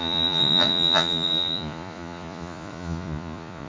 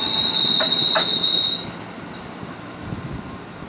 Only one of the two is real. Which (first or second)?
second